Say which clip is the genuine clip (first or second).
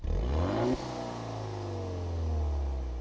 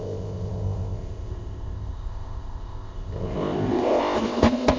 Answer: first